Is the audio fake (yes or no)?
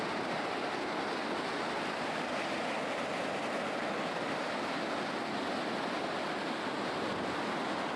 no